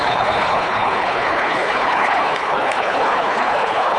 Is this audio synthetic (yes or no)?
yes